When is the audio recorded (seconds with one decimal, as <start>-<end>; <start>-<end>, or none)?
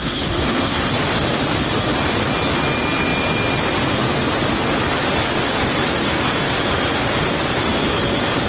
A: 0.9-8.5